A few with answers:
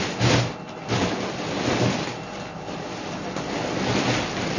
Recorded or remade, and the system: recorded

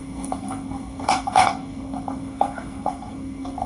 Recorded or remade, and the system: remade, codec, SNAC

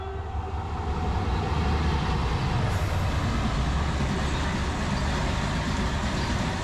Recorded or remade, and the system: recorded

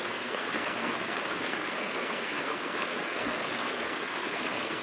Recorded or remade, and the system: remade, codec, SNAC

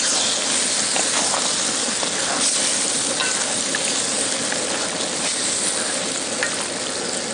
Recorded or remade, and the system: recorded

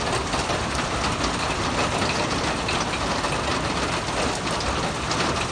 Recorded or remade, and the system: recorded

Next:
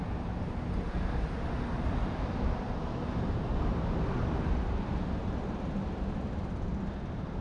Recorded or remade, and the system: recorded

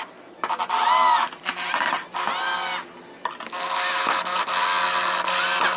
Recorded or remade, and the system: recorded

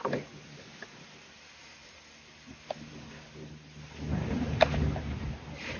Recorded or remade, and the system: recorded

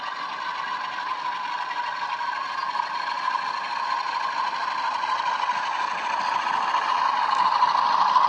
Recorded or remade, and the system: recorded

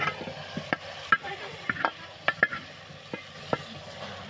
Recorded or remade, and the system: recorded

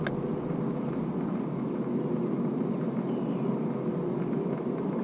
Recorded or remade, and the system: recorded